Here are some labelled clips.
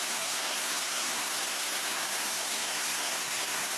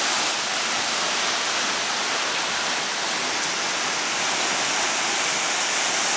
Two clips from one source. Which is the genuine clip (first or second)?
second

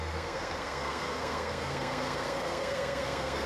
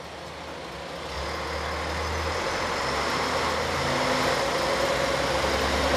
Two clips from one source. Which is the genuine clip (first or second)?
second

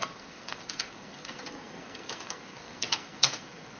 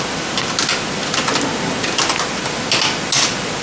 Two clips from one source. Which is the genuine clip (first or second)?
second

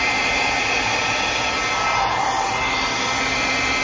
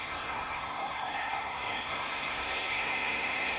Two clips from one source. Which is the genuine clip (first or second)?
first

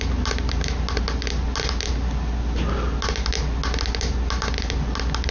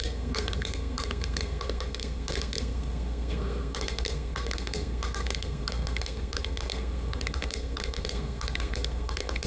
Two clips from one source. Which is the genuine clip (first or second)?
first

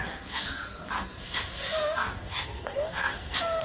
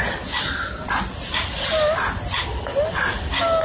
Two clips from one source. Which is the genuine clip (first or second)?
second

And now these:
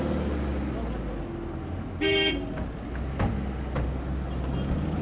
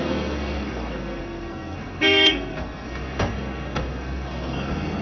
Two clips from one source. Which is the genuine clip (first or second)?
first